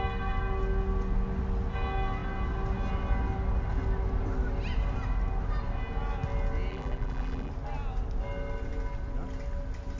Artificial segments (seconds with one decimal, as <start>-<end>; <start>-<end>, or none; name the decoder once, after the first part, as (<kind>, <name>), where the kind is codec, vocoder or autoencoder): 6.7-7.5 (vocoder, BigVGAN v2)